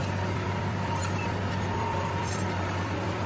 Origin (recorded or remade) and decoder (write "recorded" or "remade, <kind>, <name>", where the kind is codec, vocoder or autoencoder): remade, vocoder, BigVGAN v2